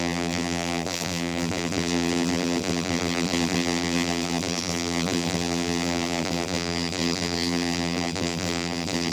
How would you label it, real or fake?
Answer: fake